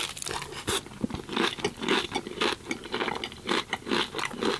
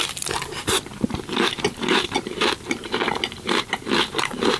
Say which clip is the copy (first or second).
second